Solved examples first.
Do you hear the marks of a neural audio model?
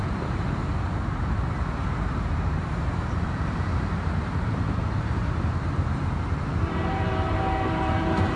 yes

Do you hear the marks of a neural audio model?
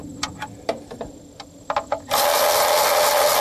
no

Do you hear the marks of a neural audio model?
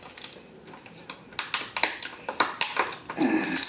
no